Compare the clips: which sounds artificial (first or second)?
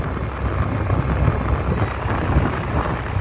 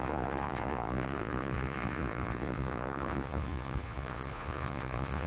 second